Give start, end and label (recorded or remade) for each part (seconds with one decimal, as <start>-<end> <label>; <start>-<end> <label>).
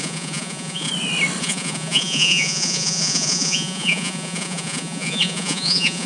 0.0-0.9 remade; 0.9-1.4 recorded; 1.4-6.1 remade